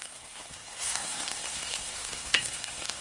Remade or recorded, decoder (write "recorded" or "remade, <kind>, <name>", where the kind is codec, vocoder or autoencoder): remade, codec, SNAC